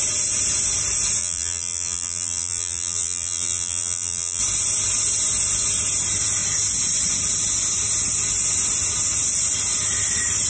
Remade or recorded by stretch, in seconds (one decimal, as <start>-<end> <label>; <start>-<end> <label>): 0.0-1.2 recorded; 1.2-4.4 remade; 4.4-10.5 recorded